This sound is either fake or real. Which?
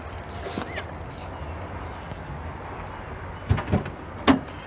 real